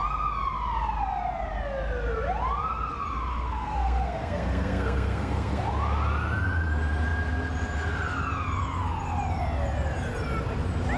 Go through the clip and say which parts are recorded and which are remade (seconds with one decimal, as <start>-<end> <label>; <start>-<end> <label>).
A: 0.0-3.3 recorded; 3.3-5.6 remade; 5.6-11.0 recorded